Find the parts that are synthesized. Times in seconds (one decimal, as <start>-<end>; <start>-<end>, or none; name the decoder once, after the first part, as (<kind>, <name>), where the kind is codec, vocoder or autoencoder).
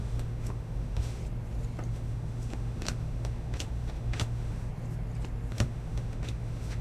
0.0-1.2 (autoencoder, DAC-VAE); 1.9-4.7; 5.5-6.8